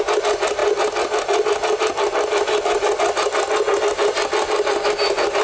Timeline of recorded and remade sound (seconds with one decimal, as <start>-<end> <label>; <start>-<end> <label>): 0.0-5.4 recorded